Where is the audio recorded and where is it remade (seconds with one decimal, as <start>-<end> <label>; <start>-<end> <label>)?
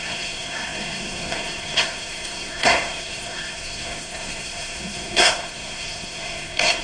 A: 0.0-6.8 remade